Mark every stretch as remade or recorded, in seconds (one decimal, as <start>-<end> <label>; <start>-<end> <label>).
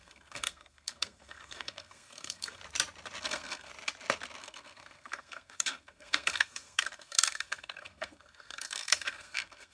0.0-2.6 remade; 2.6-3.2 recorded; 3.2-3.7 remade; 3.7-4.4 recorded; 4.4-9.7 remade